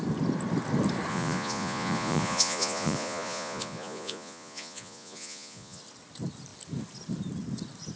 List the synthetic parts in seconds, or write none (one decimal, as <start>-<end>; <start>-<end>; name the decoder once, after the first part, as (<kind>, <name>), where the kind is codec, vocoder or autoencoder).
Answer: 1.1-5.8 (vocoder, Vocos)